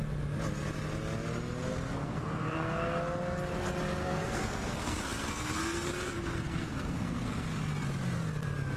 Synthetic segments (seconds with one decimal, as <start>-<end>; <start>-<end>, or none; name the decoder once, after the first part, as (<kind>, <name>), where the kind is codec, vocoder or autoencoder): 1.7-3.0 (codec, SNAC); 4.0-7.6